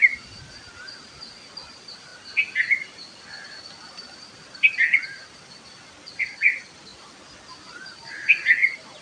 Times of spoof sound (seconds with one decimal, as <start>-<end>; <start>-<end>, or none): 0.0-6.9; 7.7-9.0